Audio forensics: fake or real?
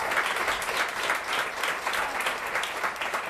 real